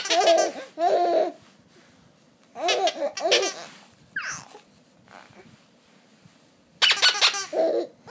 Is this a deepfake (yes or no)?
no